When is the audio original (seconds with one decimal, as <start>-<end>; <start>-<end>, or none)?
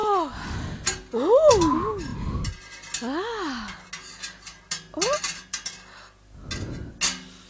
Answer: 0.0-7.5